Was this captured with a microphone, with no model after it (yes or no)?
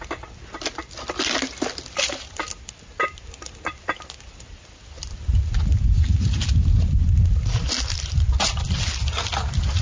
yes